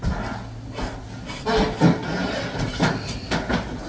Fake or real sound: real